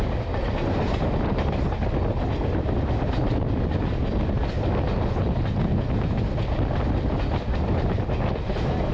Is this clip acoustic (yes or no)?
yes